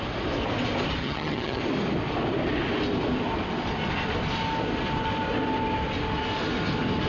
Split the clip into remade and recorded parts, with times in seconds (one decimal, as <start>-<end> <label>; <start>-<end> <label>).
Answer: 0.0-1.0 recorded; 1.0-1.6 remade; 1.6-7.1 recorded

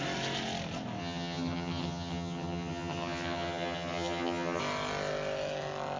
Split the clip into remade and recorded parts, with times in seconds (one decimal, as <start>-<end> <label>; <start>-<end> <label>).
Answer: 0.0-1.0 recorded; 1.0-4.6 remade; 4.6-6.0 recorded

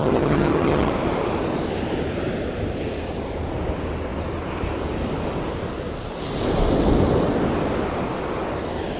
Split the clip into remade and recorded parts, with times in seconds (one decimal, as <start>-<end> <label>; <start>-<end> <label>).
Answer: 0.0-0.9 remade; 0.9-9.0 recorded

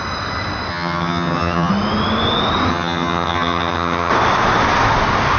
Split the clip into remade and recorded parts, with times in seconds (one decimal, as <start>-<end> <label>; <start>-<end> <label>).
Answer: 0.0-0.7 recorded; 0.7-1.7 remade; 1.7-2.7 recorded; 2.7-4.1 remade; 4.1-5.4 recorded